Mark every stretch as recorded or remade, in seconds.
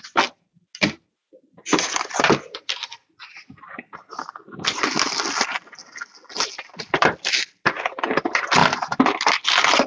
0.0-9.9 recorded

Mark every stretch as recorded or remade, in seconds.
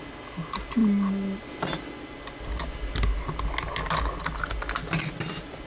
0.0-5.7 recorded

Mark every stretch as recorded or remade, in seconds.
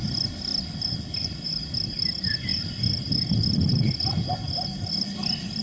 0.0-5.6 recorded